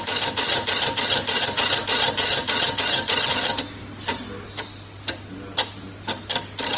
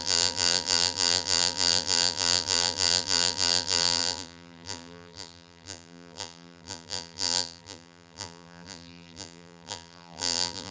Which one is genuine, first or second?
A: first